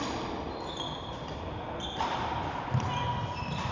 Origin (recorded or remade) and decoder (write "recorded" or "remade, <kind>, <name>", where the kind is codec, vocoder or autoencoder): recorded